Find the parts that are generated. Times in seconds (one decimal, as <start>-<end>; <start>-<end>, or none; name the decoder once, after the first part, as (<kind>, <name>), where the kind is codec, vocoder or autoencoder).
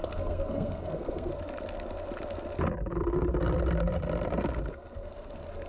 0.0-1.3 (codec, SNAC); 4.7-5.7